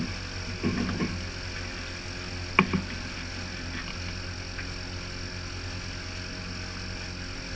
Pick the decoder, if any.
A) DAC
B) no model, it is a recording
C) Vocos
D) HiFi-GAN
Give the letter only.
B